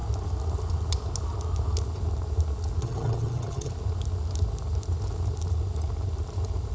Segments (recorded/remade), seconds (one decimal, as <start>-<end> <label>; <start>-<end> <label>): 0.0-2.8 recorded; 2.8-3.7 remade; 3.7-6.7 recorded